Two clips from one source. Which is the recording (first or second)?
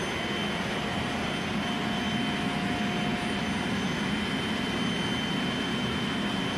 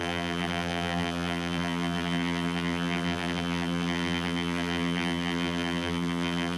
first